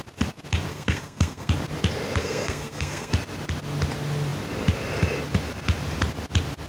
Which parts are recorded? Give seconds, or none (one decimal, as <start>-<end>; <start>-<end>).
0.0-0.7; 1.5-2.2; 3.1-6.7

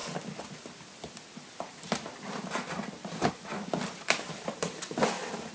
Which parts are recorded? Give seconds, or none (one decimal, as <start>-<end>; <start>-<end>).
0.0-5.5

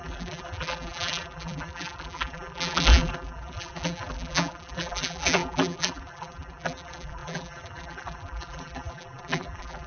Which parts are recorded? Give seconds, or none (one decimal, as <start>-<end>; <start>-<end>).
none